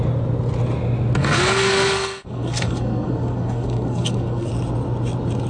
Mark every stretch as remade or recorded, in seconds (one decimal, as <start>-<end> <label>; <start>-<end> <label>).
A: 0.0-1.2 recorded; 1.2-4.5 remade; 4.5-5.5 recorded